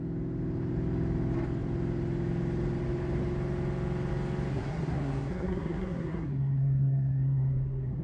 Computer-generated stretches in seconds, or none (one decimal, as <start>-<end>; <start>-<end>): 4.5-8.0